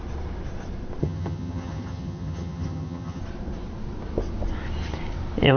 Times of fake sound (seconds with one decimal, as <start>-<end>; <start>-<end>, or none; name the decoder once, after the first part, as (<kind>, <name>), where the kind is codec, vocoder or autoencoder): 1.0-3.2 (vocoder, HiFi-GAN)